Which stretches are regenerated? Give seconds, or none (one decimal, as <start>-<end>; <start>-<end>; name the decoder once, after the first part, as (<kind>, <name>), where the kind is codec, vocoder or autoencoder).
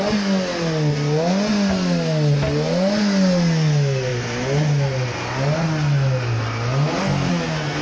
none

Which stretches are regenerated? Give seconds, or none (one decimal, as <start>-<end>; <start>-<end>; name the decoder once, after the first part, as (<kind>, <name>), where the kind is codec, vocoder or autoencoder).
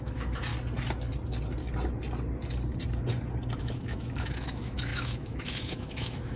0.0-0.5 (autoencoder, DAC-VAE); 3.6-6.4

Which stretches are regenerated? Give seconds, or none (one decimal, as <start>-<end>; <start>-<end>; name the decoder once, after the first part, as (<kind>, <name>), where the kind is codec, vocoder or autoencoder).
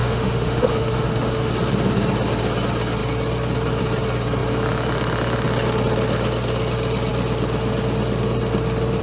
0.0-1.5 (autoencoder, DAC-VAE)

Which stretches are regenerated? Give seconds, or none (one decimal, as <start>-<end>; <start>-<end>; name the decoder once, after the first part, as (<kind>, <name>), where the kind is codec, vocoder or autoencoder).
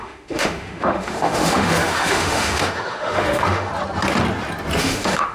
0.0-3.7 (autoencoder, DAC-VAE); 4.8-5.3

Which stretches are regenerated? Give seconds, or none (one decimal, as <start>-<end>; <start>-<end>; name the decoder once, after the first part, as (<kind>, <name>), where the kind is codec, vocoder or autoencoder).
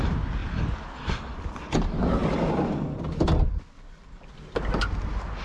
none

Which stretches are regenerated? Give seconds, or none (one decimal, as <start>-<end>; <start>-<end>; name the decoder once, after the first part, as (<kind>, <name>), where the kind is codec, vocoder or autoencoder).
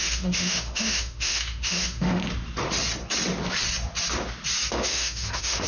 0.0-2.2 (autoencoder, DAC-VAE); 4.7-5.7